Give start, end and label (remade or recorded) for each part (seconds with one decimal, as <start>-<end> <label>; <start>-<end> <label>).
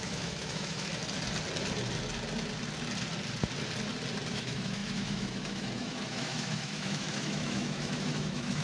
0.0-0.9 remade; 0.9-4.3 recorded; 4.3-8.6 remade